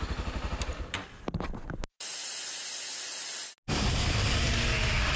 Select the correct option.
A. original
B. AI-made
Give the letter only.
A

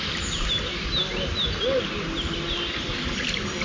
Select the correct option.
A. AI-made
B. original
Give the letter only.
B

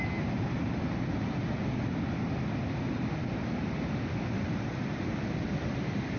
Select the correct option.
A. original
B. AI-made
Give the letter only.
A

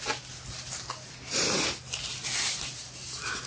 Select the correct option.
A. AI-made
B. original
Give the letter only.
B